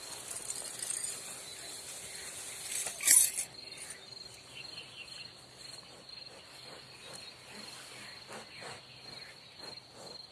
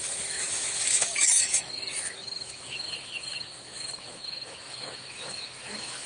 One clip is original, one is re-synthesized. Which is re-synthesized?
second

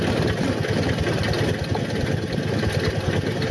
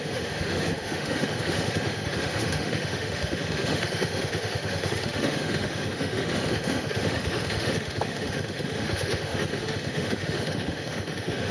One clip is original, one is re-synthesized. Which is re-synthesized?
second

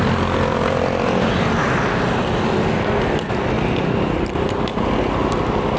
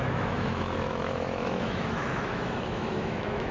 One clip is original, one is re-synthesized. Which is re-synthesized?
second